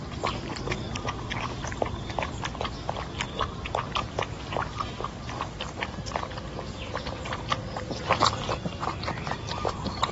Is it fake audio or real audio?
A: real